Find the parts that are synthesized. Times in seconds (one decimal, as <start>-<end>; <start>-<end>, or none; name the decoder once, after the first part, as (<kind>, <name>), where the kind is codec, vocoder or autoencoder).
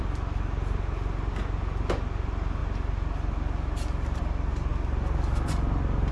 none